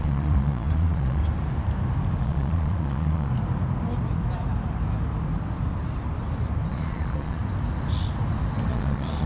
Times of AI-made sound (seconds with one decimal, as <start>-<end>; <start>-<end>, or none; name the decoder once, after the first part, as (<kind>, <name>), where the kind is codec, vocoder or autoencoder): 0.0-1.2 (vocoder, Vocos); 2.2-3.3; 6.7-7.4; 8.7-9.3